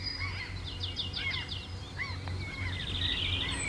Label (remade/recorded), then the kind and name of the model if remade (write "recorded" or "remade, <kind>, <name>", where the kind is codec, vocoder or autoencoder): recorded